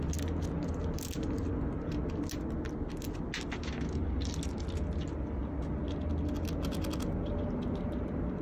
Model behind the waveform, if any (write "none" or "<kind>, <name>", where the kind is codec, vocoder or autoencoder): none